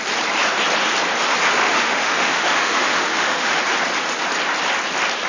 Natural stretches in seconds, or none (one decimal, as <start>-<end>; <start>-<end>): 0.0-1.6; 3.6-5.3